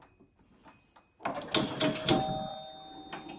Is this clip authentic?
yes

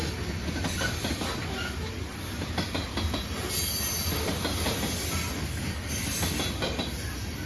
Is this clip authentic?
yes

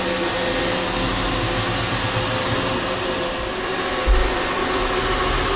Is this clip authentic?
yes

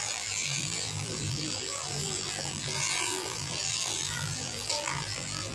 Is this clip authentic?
no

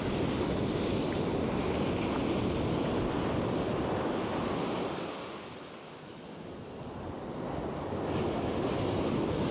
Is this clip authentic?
yes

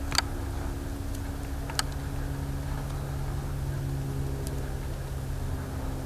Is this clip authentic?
yes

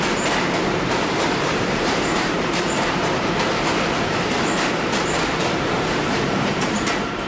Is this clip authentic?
no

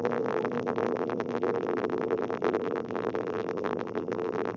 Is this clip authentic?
no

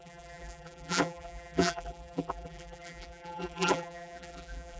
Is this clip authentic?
no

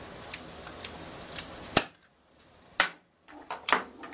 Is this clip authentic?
no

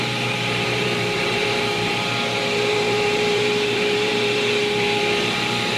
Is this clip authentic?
no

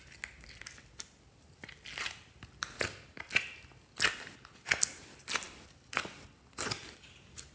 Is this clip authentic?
yes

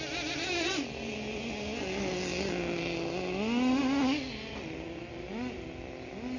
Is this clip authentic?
yes